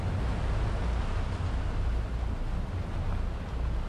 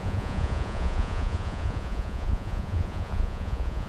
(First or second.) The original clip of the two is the first